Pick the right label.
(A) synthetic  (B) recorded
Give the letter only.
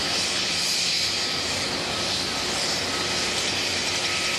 B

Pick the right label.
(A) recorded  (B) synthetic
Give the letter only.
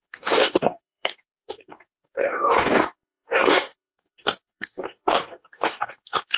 B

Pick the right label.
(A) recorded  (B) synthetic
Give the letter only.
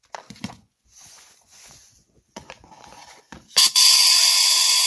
B